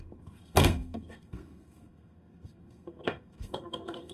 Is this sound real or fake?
fake